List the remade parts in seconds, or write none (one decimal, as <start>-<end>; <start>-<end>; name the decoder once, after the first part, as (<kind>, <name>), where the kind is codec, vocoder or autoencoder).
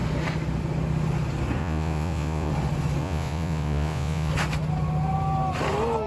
1.6-2.5 (vocoder, Vocos); 3.0-4.3